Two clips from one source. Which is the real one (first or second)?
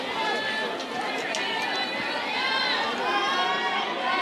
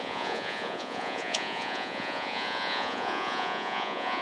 first